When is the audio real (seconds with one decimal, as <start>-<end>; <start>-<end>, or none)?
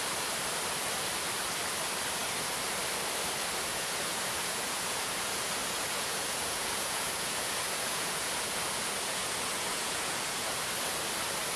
0.0-3.7; 5.1-5.6; 10.6-11.6